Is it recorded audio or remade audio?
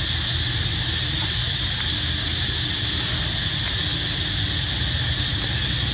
recorded